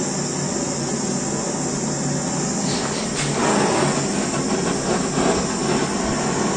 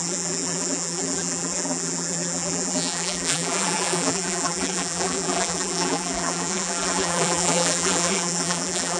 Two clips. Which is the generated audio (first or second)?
second